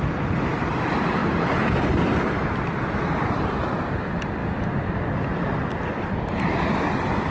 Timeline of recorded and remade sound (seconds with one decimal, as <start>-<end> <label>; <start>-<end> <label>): 0.0-7.3 recorded